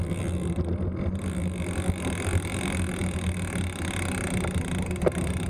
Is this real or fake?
real